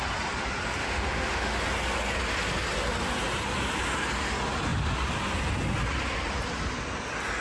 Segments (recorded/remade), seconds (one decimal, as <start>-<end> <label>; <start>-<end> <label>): 0.0-0.8 recorded; 0.8-1.6 remade; 1.6-7.4 recorded